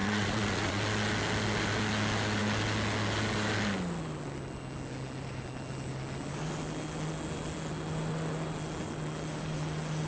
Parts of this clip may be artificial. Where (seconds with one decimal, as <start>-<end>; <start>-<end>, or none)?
0.0-0.8